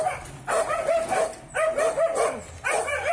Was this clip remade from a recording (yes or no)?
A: no